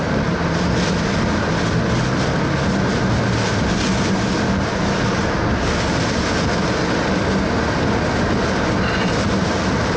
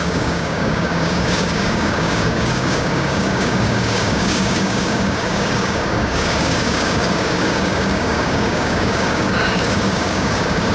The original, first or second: first